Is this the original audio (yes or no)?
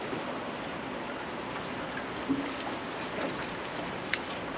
yes